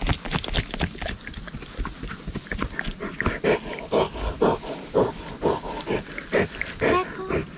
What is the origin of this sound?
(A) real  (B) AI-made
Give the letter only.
A